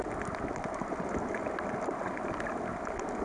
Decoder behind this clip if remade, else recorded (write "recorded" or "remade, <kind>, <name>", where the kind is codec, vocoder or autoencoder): recorded